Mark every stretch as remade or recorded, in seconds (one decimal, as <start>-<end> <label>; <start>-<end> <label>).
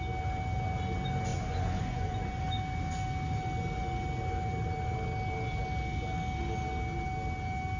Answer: 0.0-1.3 recorded; 1.3-2.4 remade; 2.4-7.8 recorded